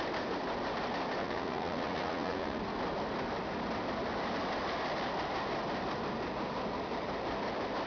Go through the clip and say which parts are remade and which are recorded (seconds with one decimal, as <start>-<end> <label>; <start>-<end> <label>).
0.0-1.2 recorded; 1.2-2.6 remade; 2.6-7.9 recorded